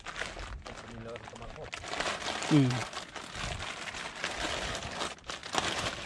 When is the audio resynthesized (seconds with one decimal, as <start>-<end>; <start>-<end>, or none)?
none

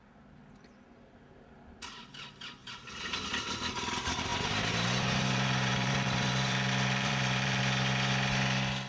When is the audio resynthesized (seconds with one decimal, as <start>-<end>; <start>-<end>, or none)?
2.6-3.2; 4.3-7.6